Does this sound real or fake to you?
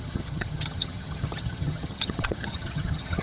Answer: fake